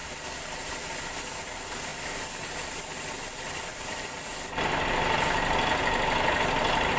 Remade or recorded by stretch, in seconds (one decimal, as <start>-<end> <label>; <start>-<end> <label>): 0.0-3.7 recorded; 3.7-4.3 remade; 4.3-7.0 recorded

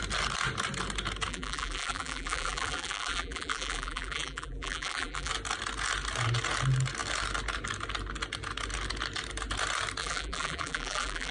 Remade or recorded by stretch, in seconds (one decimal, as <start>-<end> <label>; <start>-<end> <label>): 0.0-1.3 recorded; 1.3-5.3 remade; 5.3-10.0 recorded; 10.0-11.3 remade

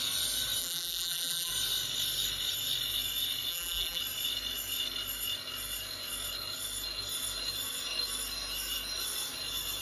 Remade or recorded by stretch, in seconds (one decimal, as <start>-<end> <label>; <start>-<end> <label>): 0.0-0.6 recorded; 0.6-1.5 remade; 1.5-3.5 recorded; 3.5-4.0 remade; 4.0-9.8 recorded

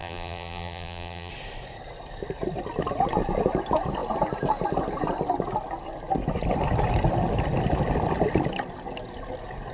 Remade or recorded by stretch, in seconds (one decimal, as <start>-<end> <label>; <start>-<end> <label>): 0.0-1.3 remade; 1.3-9.7 recorded

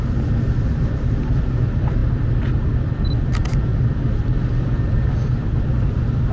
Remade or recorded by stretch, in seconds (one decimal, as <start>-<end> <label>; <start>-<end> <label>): 0.0-6.3 recorded

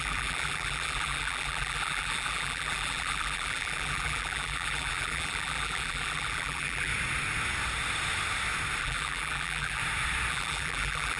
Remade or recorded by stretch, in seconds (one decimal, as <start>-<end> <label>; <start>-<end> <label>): 0.0-6.9 remade; 6.9-8.8 recorded; 8.8-9.8 remade; 9.8-10.3 recorded; 10.3-11.2 remade